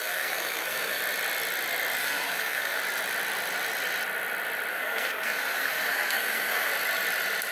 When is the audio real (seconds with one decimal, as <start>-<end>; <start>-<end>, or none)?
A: 1.0-2.0; 2.8-4.7; 6.7-7.5